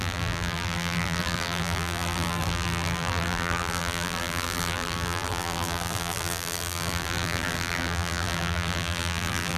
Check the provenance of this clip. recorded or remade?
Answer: remade